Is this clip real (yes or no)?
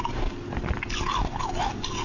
yes